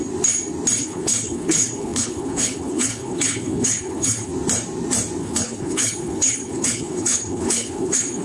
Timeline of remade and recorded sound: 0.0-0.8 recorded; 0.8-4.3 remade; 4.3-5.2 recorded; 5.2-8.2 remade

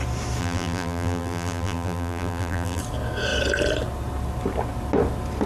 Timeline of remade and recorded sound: 0.0-0.4 recorded; 0.4-2.8 remade; 2.8-5.5 recorded